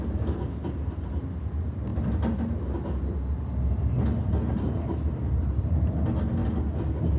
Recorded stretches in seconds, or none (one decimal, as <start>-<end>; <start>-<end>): 0.0-7.2